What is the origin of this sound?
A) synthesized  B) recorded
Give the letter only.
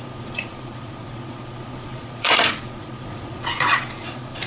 A